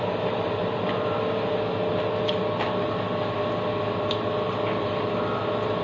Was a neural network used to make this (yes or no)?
no